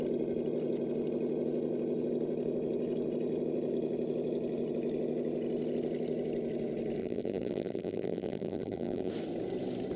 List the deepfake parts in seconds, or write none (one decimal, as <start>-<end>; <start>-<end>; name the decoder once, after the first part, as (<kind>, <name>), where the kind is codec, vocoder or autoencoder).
7.0-9.1 (vocoder, BigVGAN v2)